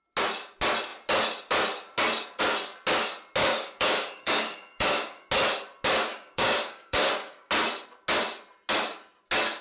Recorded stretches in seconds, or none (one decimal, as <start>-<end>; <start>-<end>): 0.0-3.4; 5.3-6.1; 7.5-9.6